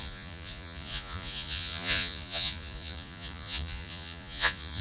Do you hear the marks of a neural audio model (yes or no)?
yes